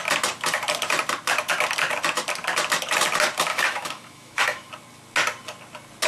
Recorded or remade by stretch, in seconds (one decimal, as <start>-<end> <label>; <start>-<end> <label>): 0.0-3.5 recorded; 3.5-4.7 remade; 4.7-6.1 recorded